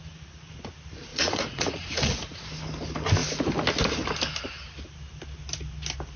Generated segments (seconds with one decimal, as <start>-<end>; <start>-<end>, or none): 1.1-2.4